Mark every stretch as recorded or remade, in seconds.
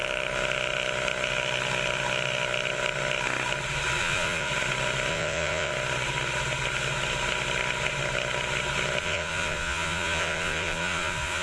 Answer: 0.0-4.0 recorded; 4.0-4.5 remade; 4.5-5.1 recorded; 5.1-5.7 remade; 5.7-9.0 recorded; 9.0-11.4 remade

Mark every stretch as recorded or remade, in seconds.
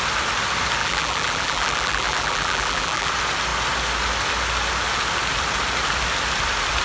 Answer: 0.0-0.8 recorded; 0.8-3.1 remade; 3.1-6.8 recorded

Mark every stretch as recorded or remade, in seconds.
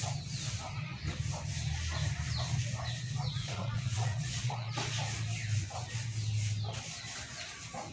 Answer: 0.0-3.4 recorded; 3.4-4.7 remade; 4.7-7.9 recorded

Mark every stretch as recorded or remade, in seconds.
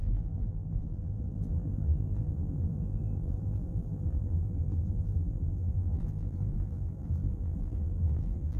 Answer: 0.0-8.6 remade